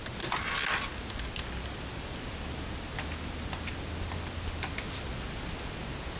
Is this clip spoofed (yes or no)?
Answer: no